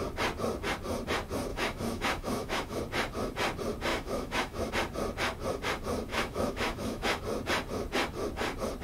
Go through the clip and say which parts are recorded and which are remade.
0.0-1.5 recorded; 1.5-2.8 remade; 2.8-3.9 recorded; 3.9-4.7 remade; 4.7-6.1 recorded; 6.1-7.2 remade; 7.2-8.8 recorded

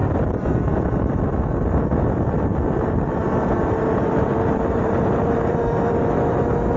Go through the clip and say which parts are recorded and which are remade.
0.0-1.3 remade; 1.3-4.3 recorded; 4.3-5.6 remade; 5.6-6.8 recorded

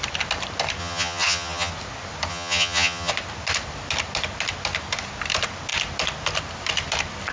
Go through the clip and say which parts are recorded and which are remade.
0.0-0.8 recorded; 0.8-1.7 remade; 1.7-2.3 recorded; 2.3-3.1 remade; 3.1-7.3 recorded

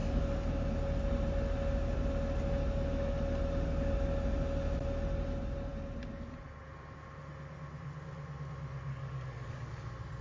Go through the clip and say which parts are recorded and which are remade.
0.0-0.5 remade; 0.5-8.9 recorded; 8.9-9.7 remade; 9.7-10.2 recorded

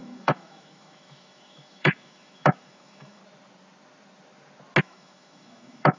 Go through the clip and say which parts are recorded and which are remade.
0.0-3.2 remade; 3.2-4.8 recorded; 4.8-6.0 remade